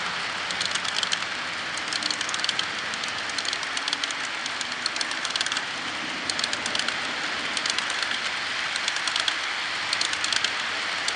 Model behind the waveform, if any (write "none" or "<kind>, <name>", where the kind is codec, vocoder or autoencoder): none